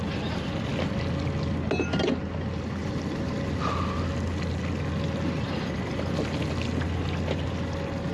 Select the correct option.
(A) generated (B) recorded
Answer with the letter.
B